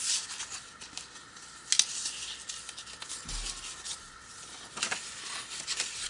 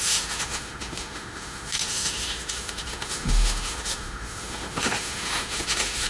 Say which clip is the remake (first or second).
second